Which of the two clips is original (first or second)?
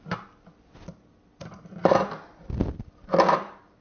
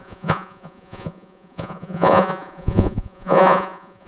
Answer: first